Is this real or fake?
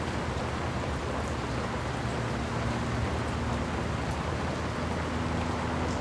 real